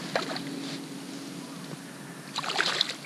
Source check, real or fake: real